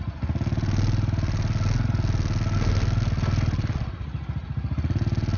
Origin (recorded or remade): recorded